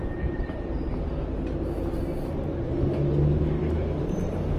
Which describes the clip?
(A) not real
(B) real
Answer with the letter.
B